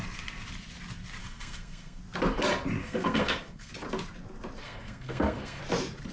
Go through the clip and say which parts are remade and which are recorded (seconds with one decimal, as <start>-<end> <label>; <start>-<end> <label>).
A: 0.0-1.2 recorded; 1.2-2.0 remade; 2.0-2.8 recorded; 2.8-3.7 remade; 3.7-4.6 recorded; 4.6-5.6 remade; 5.6-6.1 recorded